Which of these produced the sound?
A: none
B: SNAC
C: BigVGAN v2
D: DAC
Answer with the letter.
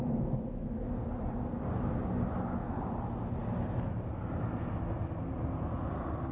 A